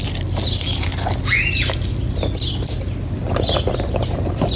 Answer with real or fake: real